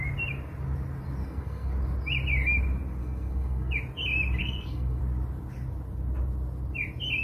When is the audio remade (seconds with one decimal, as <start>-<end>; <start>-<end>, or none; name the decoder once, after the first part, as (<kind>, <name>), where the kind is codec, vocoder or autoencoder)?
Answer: 1.2-1.7 (codec, SNAC); 3.0-3.7; 4.4-5.0